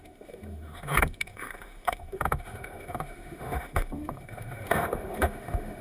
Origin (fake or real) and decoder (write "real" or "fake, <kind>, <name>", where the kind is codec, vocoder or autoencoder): fake, autoencoder, DAC-VAE